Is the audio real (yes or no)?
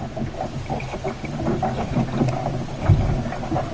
yes